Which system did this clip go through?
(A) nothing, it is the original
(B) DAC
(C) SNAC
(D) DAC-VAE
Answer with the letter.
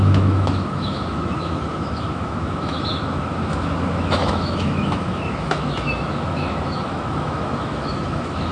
D